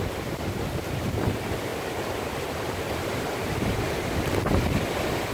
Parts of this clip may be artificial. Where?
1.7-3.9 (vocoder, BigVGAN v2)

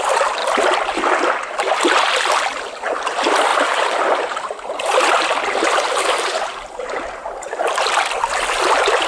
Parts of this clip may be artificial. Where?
3.5-7.8 (vocoder, BigVGAN v2)

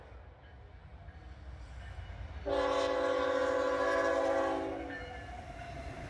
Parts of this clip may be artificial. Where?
none

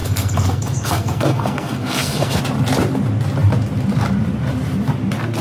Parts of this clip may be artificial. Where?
0.0-2.4 (codec, SNAC)

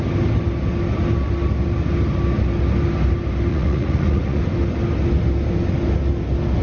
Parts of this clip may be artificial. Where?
3.5-4.4 (vocoder, Vocos)